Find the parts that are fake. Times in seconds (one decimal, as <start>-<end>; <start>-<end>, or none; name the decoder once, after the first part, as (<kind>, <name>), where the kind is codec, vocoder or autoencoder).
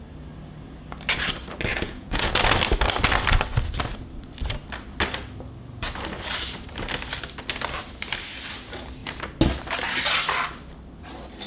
1.7-2.3 (vocoder, Vocos)